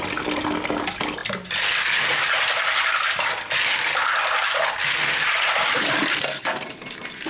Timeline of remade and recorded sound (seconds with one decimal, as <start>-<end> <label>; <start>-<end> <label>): 0.0-7.3 recorded